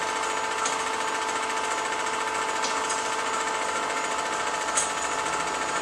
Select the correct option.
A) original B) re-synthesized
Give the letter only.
A